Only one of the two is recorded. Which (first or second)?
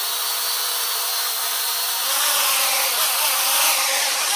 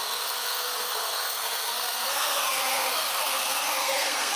first